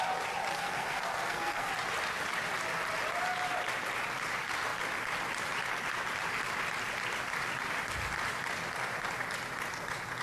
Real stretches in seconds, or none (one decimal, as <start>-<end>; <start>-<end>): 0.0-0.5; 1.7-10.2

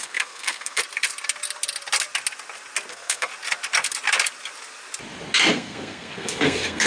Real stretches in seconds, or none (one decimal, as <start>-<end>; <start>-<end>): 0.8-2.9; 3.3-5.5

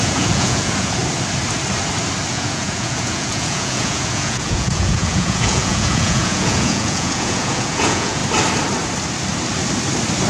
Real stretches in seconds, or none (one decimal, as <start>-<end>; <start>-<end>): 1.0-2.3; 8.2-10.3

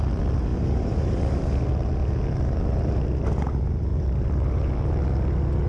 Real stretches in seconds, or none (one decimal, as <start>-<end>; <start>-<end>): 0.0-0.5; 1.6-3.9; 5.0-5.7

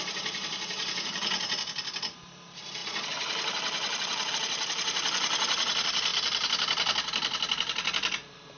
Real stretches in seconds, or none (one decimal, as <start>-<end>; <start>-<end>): none